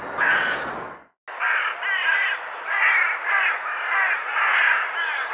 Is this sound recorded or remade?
recorded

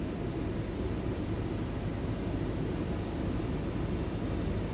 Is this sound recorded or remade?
remade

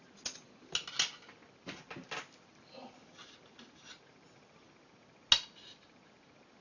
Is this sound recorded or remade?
recorded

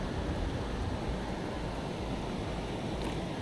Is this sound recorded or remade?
recorded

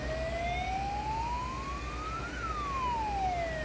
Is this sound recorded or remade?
recorded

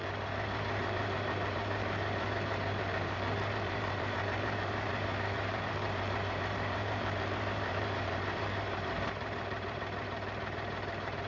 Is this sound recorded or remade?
remade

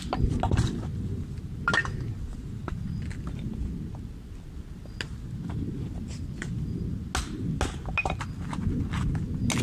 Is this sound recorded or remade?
recorded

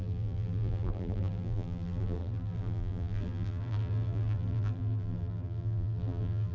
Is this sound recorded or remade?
remade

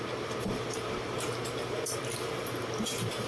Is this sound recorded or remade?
remade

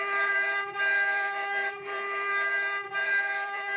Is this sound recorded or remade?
remade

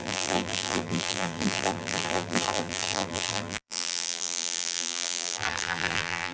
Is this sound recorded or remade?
remade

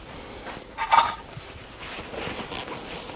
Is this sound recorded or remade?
remade